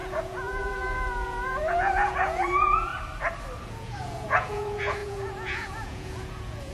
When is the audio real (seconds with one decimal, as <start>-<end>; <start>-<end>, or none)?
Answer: 2.9-3.7